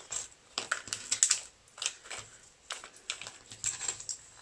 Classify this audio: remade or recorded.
recorded